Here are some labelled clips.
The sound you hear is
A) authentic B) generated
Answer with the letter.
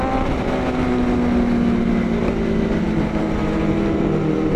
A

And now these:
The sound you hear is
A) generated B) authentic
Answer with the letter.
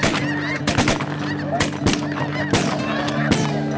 B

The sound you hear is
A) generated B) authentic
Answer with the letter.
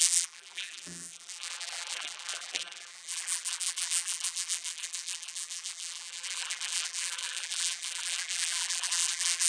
A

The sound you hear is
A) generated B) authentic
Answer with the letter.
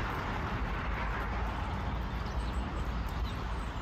B